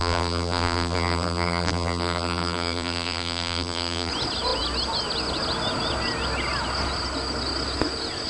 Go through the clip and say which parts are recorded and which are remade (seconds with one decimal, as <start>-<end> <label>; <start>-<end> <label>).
0.0-4.1 remade; 4.1-8.3 recorded